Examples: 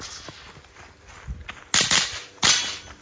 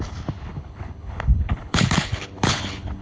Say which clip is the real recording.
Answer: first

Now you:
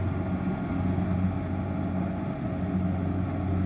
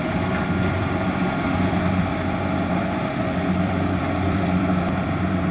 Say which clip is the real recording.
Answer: first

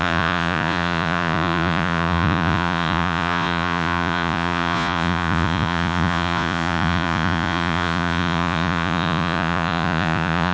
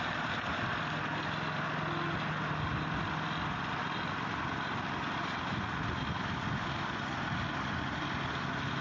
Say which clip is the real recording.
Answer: second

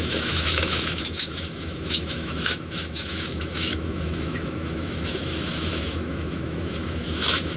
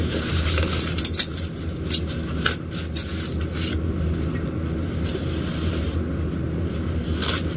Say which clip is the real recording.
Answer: second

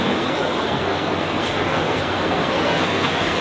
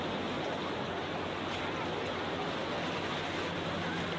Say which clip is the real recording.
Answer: second